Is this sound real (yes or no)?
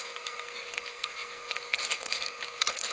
no